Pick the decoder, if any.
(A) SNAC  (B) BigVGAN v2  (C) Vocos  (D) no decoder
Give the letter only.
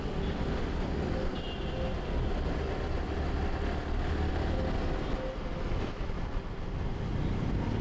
D